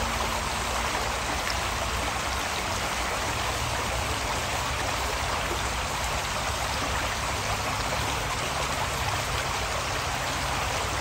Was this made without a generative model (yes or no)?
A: yes